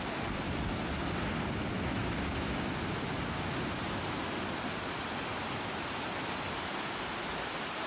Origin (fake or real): real